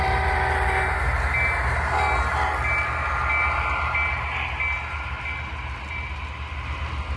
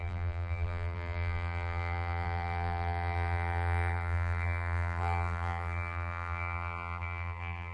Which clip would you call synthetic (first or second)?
second